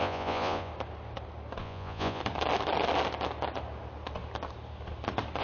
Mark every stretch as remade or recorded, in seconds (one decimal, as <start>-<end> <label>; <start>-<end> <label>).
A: 0.0-0.7 remade; 0.7-1.6 recorded; 1.6-2.2 remade; 2.2-5.4 recorded